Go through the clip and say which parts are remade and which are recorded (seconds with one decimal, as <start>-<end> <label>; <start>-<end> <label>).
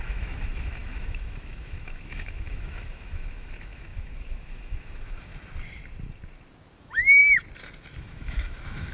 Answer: 0.0-5.3 remade; 5.3-6.8 recorded; 6.8-7.2 remade; 7.2-8.0 recorded; 8.0-8.9 remade